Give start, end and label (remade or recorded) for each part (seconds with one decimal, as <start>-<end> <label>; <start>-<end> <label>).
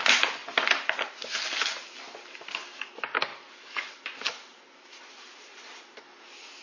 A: 0.0-6.6 recorded